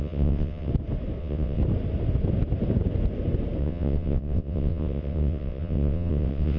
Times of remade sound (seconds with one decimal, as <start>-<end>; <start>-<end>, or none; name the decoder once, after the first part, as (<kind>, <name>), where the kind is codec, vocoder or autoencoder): 0.0-0.7 (vocoder, WaveNeXt); 1.2-1.6; 3.6-6.6